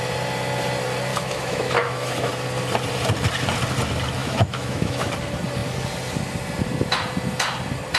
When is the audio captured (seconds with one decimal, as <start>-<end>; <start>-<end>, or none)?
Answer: 0.0-1.1; 2.3-4.2; 5.1-8.0